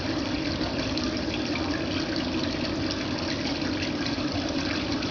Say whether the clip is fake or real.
real